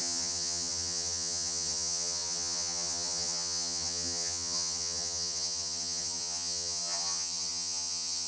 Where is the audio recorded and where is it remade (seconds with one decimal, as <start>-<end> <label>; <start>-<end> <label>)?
0.0-8.3 remade